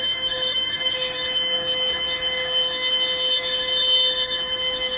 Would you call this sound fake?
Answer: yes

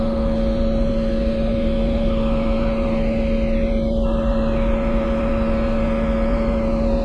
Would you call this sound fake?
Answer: no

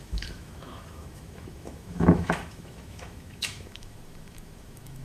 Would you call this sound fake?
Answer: yes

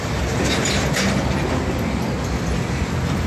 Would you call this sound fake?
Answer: no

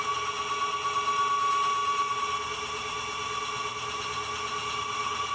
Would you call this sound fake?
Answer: no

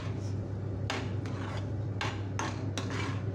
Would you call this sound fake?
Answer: no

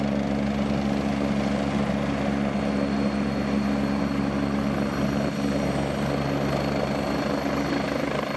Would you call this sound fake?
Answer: no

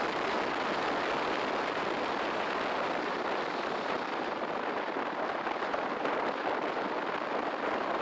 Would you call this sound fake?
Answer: no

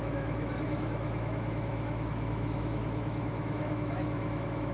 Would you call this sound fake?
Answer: yes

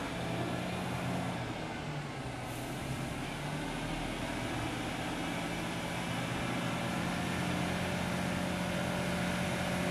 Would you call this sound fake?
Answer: no